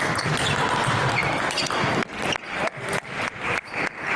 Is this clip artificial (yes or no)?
no